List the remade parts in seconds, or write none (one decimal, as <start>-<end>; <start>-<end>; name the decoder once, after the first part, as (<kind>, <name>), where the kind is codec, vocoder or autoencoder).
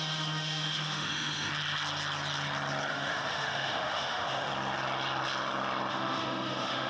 0.0-1.5 (autoencoder, DAC-VAE); 2.9-4.5; 5.9-6.9